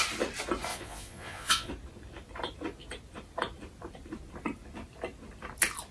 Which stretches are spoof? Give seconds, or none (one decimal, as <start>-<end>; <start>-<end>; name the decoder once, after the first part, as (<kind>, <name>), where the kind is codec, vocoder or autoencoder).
0.7-1.7 (vocoder, Vocos)